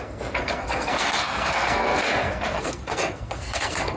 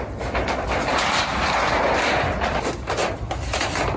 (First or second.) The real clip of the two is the second